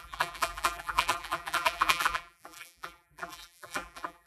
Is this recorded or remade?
remade